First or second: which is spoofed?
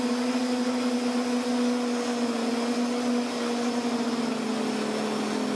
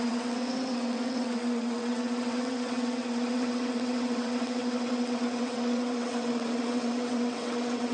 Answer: second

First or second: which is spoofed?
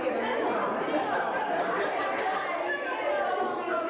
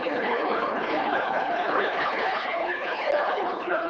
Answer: second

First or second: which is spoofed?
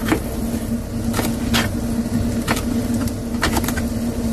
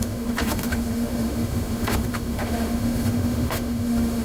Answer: second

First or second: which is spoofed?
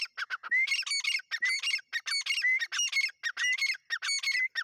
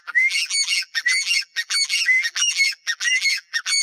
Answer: second